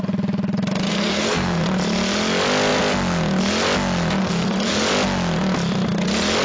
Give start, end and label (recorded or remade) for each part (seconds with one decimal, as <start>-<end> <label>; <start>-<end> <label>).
0.0-0.9 recorded; 0.9-1.6 remade; 1.6-4.2 recorded; 4.2-4.7 remade; 4.7-6.4 recorded